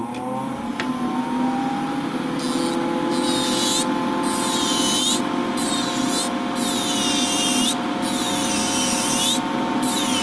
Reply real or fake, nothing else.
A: real